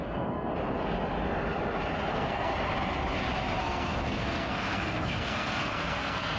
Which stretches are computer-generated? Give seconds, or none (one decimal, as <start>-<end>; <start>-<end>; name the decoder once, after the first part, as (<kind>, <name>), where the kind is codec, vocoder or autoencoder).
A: 0.0-0.5 (codec, SNAC); 2.1-2.5; 3.6-6.4